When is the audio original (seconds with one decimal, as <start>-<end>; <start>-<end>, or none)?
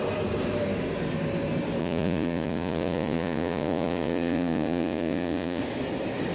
0.0-1.8; 5.6-6.3